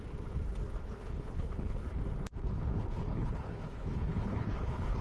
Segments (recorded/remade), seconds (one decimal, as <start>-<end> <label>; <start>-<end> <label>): 0.0-0.8 recorded; 0.8-2.0 remade; 2.0-2.4 recorded; 2.4-5.0 remade